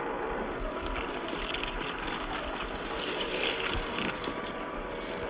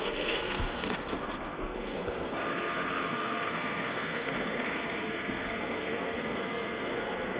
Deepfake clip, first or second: second